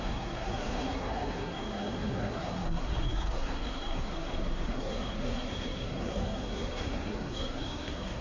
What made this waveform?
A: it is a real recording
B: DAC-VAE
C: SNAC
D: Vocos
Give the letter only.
C